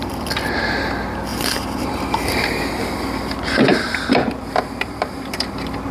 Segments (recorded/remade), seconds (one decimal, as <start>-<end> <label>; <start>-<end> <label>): 0.0-1.3 recorded; 1.3-2.6 remade; 2.6-3.7 recorded; 3.7-5.3 remade; 5.3-5.9 recorded